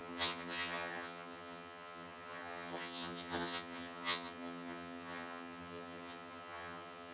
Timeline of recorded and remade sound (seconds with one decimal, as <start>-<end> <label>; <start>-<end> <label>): 0.0-7.1 remade